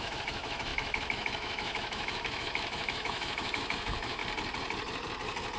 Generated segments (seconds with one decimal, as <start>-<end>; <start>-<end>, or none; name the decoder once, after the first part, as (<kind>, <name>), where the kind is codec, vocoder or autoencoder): 0.0-4.2 (autoencoder, DAC-VAE)